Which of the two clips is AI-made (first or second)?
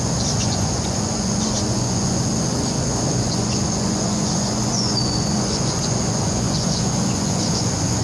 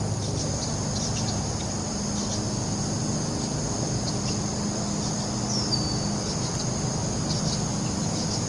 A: first